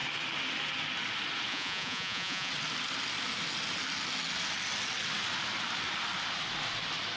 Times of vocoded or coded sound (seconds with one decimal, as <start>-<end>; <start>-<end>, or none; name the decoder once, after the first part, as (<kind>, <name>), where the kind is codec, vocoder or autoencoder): 1.5-2.5 (vocoder, Vocos)